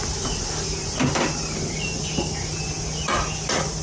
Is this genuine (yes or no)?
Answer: yes